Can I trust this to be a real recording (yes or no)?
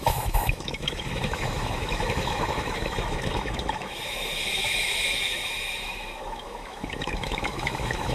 no